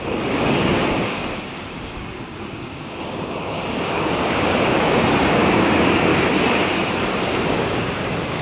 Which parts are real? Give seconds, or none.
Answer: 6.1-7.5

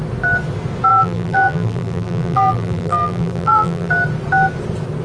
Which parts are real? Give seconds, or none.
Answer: 0.0-0.9; 3.9-5.0

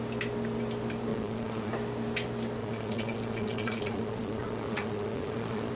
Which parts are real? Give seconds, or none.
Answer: 0.0-1.1; 1.7-2.6

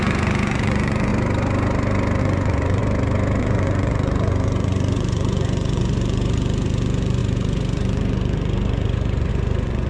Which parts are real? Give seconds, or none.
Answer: 1.1-2.2; 2.8-3.4

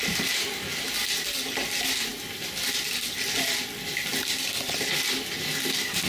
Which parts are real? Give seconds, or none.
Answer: 0.0-6.1